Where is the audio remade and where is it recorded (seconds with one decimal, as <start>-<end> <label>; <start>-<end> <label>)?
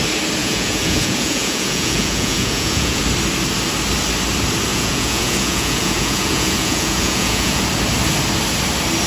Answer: 0.0-0.4 recorded; 0.4-3.0 remade; 3.0-4.7 recorded; 4.7-7.6 remade; 7.6-9.1 recorded